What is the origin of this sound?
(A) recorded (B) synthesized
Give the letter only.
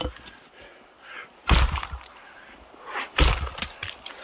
A